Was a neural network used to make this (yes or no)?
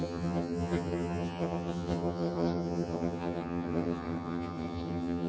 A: yes